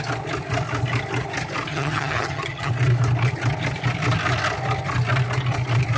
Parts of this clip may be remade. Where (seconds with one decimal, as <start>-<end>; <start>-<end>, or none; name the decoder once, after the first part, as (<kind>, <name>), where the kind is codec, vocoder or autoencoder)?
1.7-2.7 (vocoder, HiFi-GAN)